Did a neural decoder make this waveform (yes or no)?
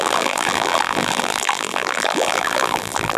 yes